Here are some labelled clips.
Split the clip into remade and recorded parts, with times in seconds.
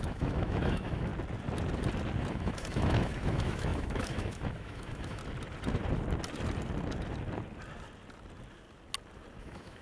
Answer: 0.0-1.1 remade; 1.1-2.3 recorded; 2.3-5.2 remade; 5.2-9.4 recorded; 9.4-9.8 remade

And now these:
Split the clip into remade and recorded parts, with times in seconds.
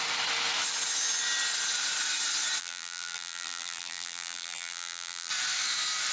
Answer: 0.0-2.6 recorded; 2.6-5.3 remade; 5.3-6.1 recorded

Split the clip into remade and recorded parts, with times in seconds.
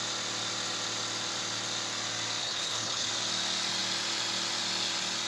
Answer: 0.0-2.4 recorded; 2.4-3.1 remade; 3.1-5.3 recorded